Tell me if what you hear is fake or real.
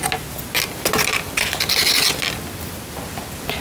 real